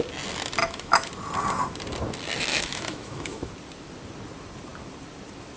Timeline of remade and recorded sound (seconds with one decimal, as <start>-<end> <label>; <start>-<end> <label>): 0.0-0.6 recorded; 0.6-1.1 remade; 1.1-2.5 recorded; 2.5-3.5 remade; 3.5-5.6 recorded